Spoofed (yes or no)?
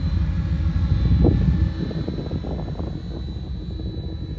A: no